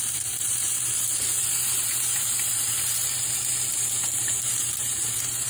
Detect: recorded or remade remade